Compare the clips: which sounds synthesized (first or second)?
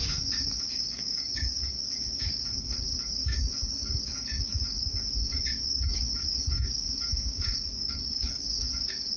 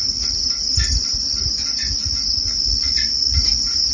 first